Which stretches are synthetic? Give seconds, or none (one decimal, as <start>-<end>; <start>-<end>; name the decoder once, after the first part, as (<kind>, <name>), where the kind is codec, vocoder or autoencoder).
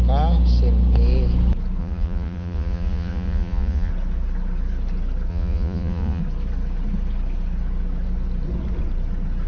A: 1.8-3.9 (vocoder, Vocos); 5.3-6.2